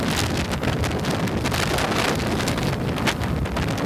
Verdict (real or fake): real